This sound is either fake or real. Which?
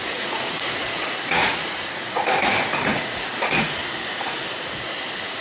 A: fake